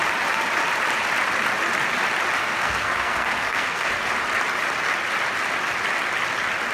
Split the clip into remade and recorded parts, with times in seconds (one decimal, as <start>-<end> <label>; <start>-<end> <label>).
0.0-2.4 recorded; 2.4-3.9 remade; 3.9-6.7 recorded